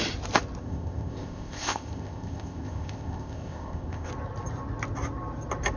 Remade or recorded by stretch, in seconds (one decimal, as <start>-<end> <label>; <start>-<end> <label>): 0.0-0.6 recorded; 0.6-4.1 remade; 4.1-5.8 recorded